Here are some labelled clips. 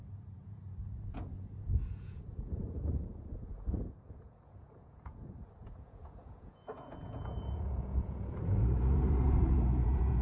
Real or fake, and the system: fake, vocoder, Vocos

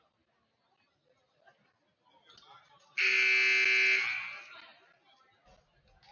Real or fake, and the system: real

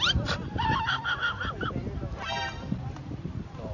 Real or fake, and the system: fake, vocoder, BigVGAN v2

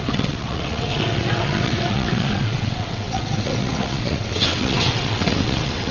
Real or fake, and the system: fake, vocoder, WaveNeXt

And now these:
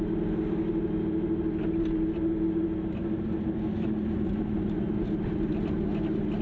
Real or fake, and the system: real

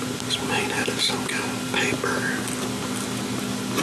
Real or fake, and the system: real